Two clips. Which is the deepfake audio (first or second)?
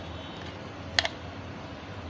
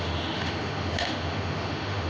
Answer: second